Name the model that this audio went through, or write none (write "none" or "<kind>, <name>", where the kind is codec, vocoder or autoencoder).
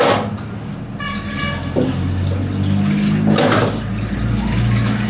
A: none